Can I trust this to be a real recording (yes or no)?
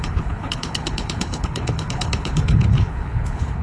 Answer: no